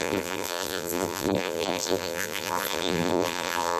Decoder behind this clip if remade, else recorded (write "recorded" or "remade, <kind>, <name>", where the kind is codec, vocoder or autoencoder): remade, vocoder, BigVGAN v2